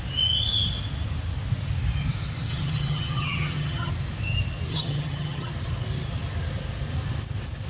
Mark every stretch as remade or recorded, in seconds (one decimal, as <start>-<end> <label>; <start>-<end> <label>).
0.0-2.5 recorded; 2.5-3.9 remade; 3.9-4.7 recorded; 4.7-5.5 remade; 5.5-7.7 recorded